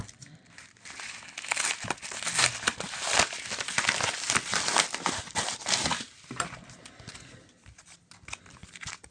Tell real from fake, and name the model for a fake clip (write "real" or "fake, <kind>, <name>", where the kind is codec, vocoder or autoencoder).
real